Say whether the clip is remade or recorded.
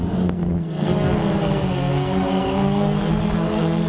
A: remade